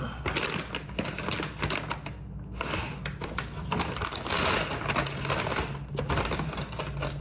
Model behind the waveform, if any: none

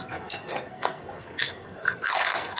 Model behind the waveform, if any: codec, SNAC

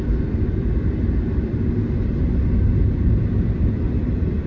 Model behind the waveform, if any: none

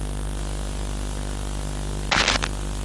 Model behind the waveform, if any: none